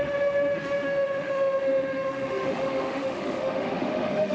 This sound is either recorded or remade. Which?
remade